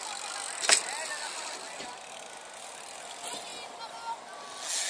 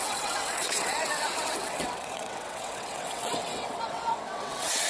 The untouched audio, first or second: first